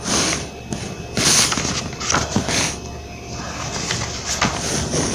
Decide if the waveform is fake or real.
real